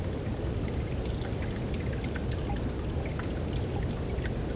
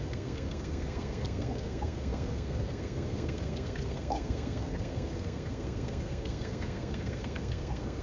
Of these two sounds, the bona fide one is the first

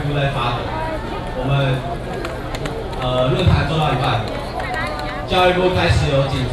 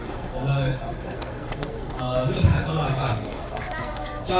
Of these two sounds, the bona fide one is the first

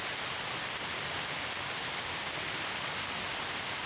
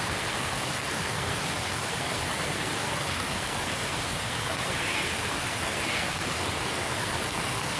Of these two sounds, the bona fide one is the first